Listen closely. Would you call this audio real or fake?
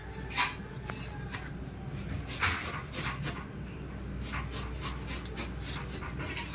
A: real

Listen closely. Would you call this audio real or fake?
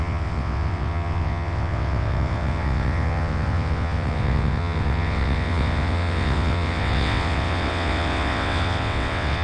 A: fake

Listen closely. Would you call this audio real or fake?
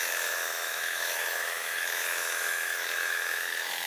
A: fake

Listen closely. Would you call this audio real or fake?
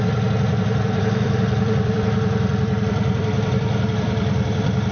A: fake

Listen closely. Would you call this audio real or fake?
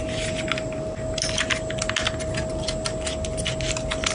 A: real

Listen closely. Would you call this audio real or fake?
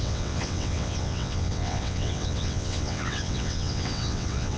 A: fake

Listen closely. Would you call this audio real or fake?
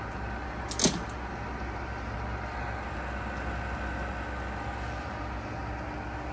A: real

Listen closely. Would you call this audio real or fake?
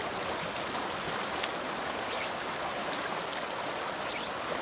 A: real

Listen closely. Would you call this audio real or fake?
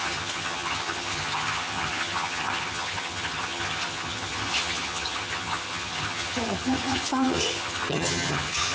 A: fake